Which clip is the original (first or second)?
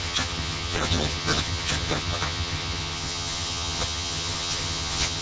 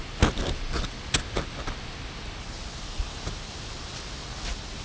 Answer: second